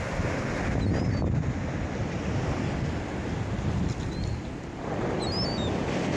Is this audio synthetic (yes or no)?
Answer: no